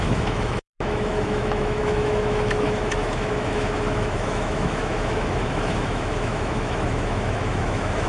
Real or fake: fake